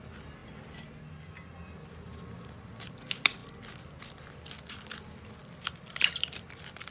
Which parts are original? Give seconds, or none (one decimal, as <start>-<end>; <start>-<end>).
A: 0.0-6.9